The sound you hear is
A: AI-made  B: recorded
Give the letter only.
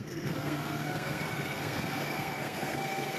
A